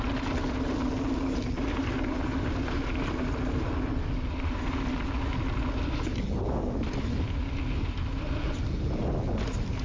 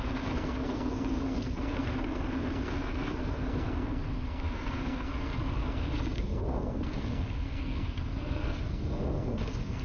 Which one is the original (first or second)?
first